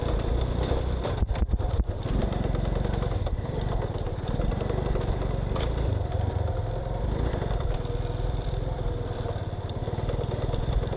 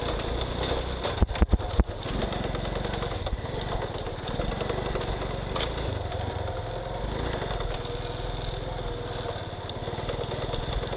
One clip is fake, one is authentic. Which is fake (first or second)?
first